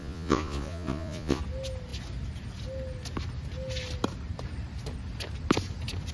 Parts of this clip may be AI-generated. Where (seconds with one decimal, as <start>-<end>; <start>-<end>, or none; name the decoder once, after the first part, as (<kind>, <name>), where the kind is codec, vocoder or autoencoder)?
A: 0.0-1.4 (vocoder, Vocos)